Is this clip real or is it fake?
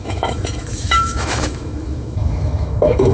fake